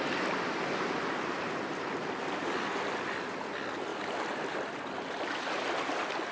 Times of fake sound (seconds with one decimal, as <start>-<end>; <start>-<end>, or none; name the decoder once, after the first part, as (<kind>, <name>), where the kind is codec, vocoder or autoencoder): none